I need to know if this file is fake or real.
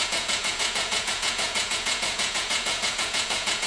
fake